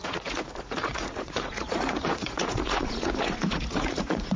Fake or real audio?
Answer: fake